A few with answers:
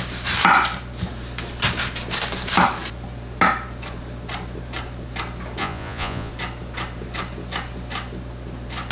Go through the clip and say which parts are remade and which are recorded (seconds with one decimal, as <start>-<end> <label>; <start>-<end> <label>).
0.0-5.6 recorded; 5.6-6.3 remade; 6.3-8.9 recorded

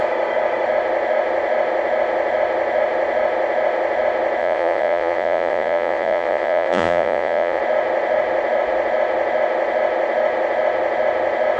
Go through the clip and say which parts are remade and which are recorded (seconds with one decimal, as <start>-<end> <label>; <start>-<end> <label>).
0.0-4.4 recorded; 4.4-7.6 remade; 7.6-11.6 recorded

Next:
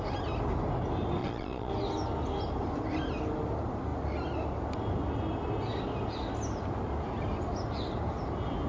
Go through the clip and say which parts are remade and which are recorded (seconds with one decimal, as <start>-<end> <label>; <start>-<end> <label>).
0.0-1.2 recorded; 1.2-1.7 remade; 1.7-8.7 recorded

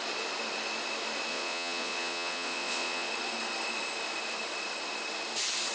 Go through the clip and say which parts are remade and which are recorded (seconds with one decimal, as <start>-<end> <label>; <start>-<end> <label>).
0.0-1.3 recorded; 1.3-3.1 remade; 3.1-5.7 recorded

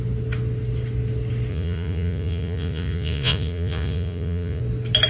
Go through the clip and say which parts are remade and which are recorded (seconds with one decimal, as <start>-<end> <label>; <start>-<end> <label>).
0.0-1.5 recorded; 1.5-4.6 remade; 4.6-5.1 recorded

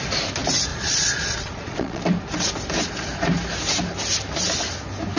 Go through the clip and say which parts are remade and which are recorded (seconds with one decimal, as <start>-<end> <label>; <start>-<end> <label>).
0.0-0.7 recorded; 0.7-2.0 remade; 2.0-5.2 recorded

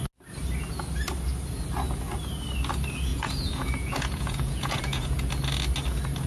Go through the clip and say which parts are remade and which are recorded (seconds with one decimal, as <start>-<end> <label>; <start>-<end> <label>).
0.0-3.1 recorded; 3.1-5.3 remade; 5.3-6.3 recorded

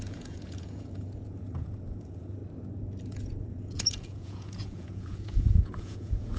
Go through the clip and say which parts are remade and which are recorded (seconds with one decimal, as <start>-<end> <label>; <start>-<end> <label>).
0.0-2.4 remade; 2.4-3.0 recorded; 3.0-6.4 remade